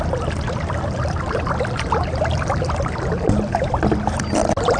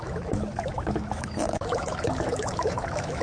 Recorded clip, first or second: first